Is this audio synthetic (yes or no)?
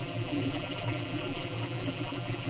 yes